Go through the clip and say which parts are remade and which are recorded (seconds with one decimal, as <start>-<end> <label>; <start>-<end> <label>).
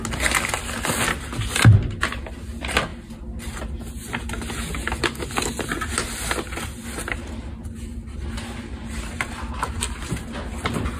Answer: 0.0-11.0 recorded